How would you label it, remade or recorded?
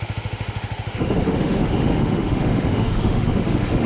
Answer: remade